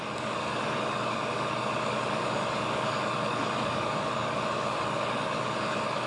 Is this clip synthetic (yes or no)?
yes